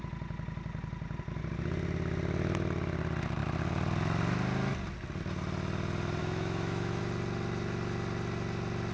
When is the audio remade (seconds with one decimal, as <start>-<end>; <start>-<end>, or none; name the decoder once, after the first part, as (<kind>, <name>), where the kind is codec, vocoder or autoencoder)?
6.2-7.0 (autoencoder, DAC-VAE)